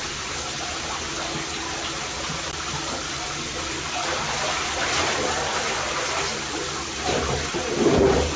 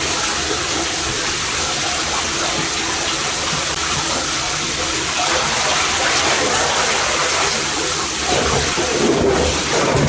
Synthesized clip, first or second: second